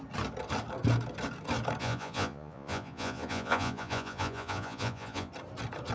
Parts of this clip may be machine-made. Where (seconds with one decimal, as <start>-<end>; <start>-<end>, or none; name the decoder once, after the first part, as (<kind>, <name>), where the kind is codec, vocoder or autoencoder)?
1.8-5.3 (vocoder, Vocos)